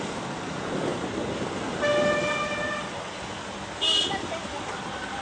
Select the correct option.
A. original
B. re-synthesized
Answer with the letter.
A